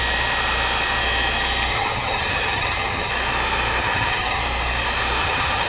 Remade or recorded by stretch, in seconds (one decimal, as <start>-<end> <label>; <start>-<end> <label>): 0.0-1.7 recorded; 1.7-3.1 remade; 3.1-3.8 recorded; 3.8-4.4 remade; 4.4-5.2 recorded; 5.2-5.7 remade